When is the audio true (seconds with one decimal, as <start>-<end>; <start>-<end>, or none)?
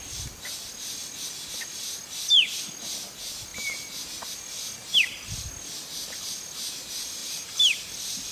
0.0-7.2; 7.8-8.3